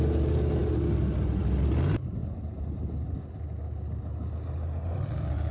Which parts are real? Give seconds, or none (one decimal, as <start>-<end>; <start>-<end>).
0.0-5.5